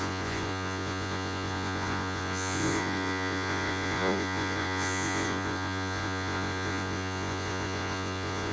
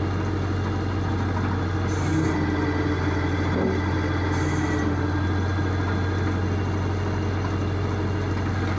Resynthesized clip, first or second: first